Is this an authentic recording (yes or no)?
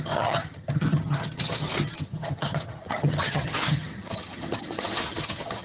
no